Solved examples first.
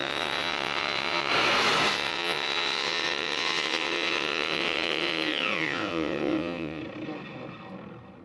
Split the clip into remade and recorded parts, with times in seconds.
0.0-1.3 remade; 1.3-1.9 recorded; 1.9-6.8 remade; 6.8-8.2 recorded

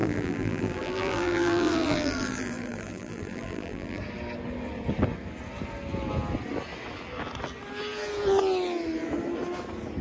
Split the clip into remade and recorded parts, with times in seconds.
0.0-4.0 remade; 4.0-10.0 recorded

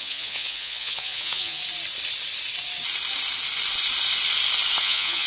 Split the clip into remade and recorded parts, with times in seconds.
0.0-1.6 remade; 1.6-4.8 recorded; 4.8-5.3 remade

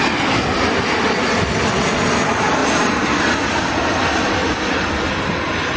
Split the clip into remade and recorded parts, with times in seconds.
0.0-2.6 recorded; 2.6-3.2 remade; 3.2-4.4 recorded; 4.4-4.9 remade; 4.9-5.8 recorded

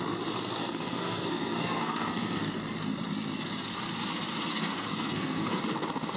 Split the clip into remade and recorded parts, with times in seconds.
0.0-0.6 recorded; 0.6-2.4 remade; 2.4-4.5 recorded; 4.5-5.6 remade; 5.6-6.2 recorded

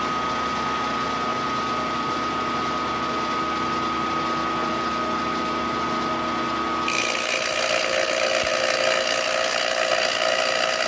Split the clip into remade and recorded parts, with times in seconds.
0.0-10.9 recorded

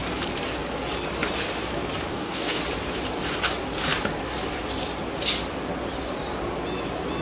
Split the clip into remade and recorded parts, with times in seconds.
0.0-2.1 recorded; 2.1-2.6 remade; 2.6-7.2 recorded

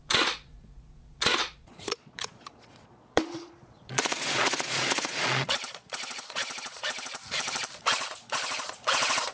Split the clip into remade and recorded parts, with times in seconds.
0.0-7.2 remade; 7.2-7.9 recorded; 7.9-9.3 remade